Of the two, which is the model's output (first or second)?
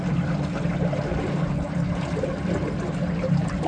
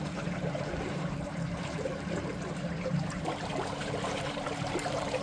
second